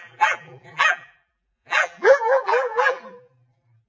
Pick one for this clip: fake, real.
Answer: fake